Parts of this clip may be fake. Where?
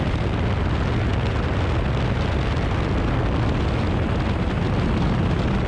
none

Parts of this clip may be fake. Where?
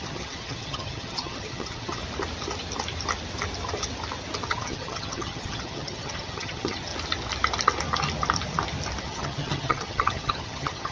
0.0-2.0 (vocoder, HiFi-GAN); 4.5-6.9; 9.0-10.9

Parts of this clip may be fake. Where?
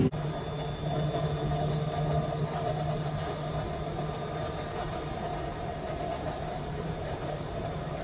5.7-8.0 (vocoder, BigVGAN v2)